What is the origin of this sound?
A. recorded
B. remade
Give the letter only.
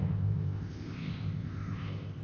B